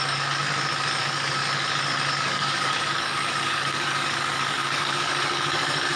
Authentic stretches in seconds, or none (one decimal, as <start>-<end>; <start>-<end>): 0.4-1.0; 1.4-2.1